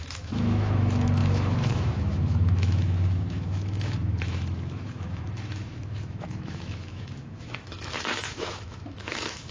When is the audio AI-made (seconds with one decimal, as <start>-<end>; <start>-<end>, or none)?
0.0-9.5